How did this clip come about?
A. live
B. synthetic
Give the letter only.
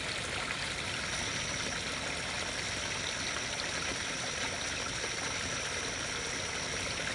A